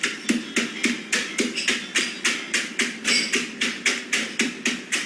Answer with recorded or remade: remade